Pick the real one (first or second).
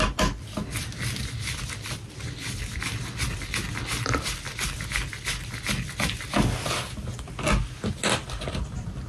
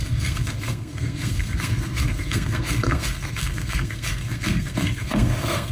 first